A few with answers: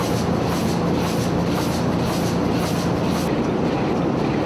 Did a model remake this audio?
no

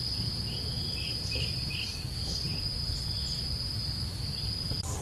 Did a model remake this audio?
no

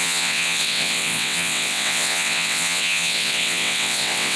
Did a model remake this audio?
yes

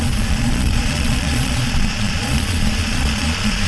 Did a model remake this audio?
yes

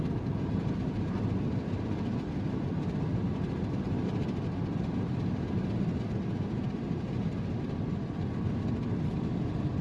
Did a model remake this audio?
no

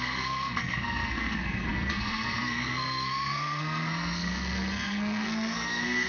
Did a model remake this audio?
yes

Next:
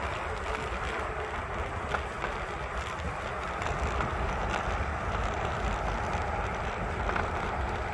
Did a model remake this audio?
no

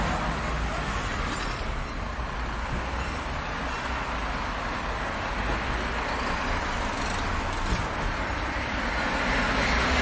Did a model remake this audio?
no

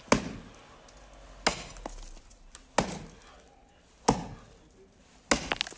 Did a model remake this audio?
no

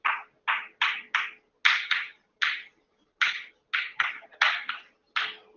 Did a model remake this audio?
no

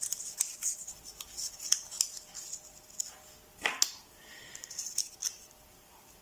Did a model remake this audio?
no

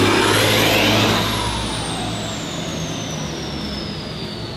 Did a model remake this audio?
no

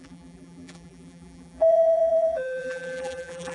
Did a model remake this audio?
yes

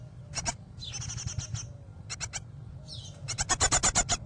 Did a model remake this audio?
no